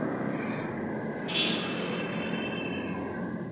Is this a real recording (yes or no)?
yes